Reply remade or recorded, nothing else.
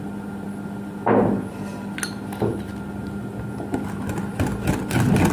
recorded